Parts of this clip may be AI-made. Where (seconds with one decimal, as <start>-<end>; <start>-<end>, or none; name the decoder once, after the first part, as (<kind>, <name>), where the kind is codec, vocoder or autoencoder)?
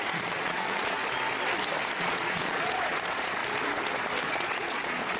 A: 0.0-1.0 (vocoder, Vocos); 2.0-3.4; 4.2-5.2